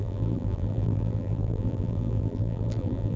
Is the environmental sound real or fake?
fake